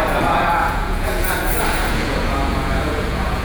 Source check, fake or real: fake